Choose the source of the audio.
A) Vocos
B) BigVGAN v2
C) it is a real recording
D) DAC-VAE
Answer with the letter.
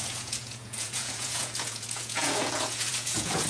A